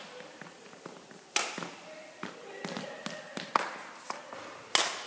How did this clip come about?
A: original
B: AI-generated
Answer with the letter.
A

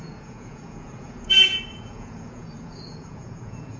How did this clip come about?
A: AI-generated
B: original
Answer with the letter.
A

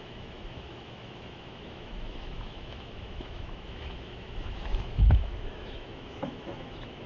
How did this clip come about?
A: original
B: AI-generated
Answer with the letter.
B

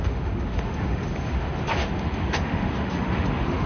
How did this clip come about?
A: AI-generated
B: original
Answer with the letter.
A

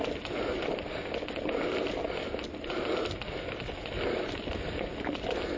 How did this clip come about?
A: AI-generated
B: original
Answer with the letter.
B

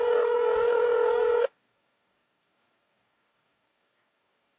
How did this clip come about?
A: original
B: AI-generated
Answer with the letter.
B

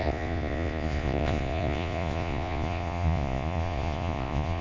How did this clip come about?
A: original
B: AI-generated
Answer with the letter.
B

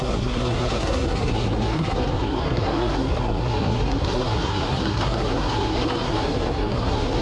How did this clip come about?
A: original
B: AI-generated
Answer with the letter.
B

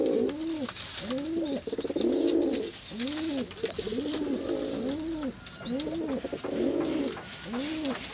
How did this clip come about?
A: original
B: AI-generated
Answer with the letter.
A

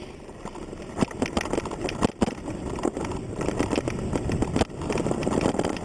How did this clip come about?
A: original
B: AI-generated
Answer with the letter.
A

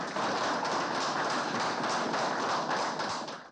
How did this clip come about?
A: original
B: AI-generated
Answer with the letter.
A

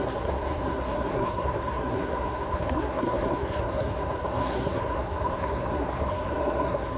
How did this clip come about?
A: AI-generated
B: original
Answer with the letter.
A